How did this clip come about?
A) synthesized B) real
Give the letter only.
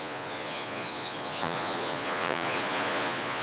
A